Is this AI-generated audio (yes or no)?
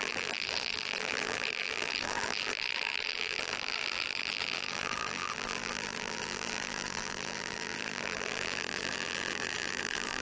yes